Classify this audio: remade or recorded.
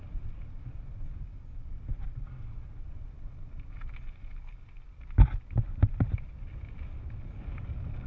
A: recorded